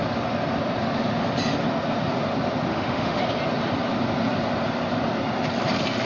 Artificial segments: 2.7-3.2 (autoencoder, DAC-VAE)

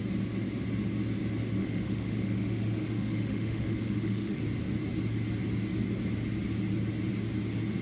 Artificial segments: 1.6-4.4 (autoencoder, DAC-VAE)

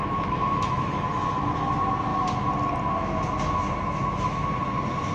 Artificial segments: 0.0-1.7 (autoencoder, DAC-VAE); 4.0-4.5

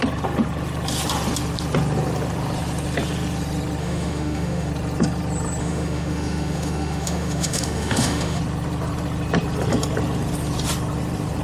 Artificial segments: 3.8-4.7 (autoencoder, DAC-VAE); 5.6-8.4